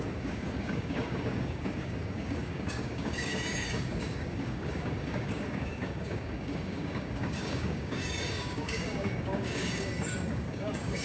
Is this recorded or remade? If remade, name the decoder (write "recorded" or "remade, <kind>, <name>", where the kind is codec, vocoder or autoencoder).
remade, codec, DAC